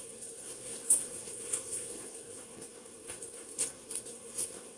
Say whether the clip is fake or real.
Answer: fake